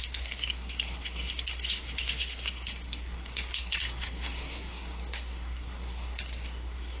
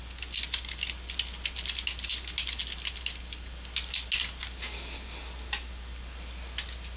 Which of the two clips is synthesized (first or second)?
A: first